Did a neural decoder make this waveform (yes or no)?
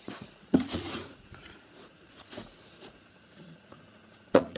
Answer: yes